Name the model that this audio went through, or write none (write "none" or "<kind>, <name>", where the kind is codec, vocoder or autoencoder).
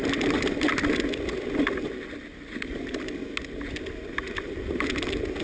none